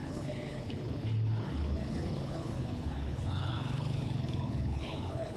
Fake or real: fake